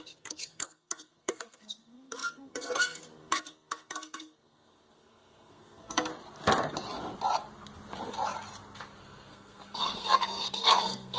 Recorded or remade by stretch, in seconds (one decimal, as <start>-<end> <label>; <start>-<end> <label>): 0.0-6.1 remade; 6.1-9.0 recorded; 9.0-11.2 remade